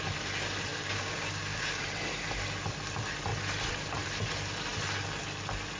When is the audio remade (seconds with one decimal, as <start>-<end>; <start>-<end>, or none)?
0.7-1.8